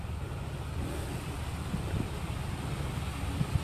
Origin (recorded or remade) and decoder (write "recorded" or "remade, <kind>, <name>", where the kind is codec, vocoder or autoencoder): recorded